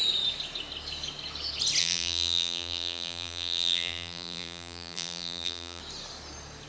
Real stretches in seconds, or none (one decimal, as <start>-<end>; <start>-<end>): 0.0-1.8; 5.8-6.7